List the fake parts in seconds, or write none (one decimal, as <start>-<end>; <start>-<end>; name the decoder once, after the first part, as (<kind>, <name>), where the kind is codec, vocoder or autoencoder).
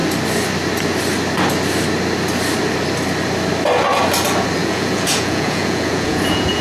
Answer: 4.6-6.6 (vocoder, Vocos)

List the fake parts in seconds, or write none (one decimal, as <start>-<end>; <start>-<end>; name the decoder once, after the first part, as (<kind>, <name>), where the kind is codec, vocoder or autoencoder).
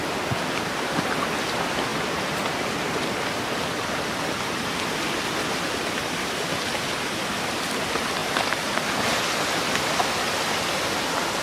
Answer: 8.2-8.9 (vocoder, BigVGAN v2)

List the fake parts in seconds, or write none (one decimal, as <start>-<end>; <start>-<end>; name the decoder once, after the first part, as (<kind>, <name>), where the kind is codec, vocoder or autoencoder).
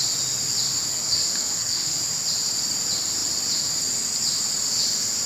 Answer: 0.9-2.0 (codec, SNAC)